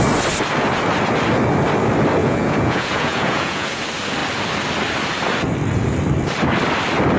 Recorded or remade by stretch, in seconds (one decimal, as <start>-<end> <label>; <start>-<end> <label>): 0.0-2.2 recorded; 2.2-3.8 remade; 3.8-7.2 recorded